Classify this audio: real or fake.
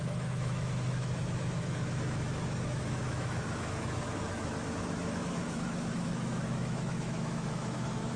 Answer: fake